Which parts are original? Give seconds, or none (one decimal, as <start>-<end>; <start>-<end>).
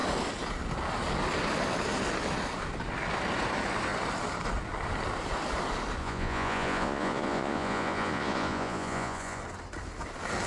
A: 0.0-6.0; 9.4-10.5